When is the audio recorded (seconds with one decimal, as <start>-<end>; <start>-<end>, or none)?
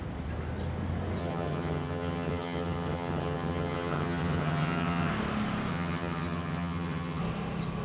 0.0-1.2; 5.1-5.7; 7.2-7.8